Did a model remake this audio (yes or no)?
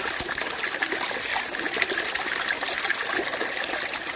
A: no